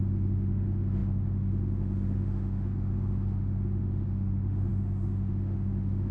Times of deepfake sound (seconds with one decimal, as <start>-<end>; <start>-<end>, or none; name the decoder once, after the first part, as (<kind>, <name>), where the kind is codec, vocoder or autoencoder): 0.0-6.1 (autoencoder, DAC-VAE)